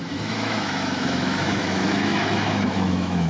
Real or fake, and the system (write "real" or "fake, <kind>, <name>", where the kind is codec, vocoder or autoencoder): fake, autoencoder, DAC-VAE